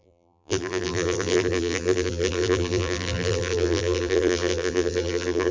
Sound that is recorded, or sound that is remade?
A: remade